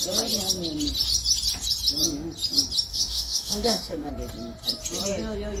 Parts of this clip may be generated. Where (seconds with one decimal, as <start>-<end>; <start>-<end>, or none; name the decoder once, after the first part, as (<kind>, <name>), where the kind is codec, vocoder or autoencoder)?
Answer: 2.9-4.1 (codec, DAC)